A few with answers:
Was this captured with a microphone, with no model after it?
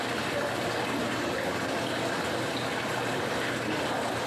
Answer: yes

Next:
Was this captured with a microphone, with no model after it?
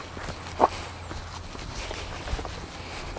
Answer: yes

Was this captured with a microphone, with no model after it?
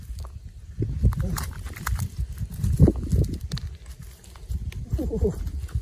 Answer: yes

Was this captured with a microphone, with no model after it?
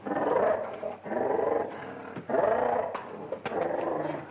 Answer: yes